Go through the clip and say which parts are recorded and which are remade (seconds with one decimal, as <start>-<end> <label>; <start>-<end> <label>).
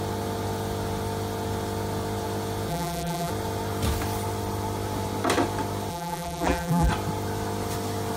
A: 0.0-2.7 recorded; 2.7-3.3 remade; 3.3-5.9 recorded; 5.9-6.9 remade; 6.9-8.2 recorded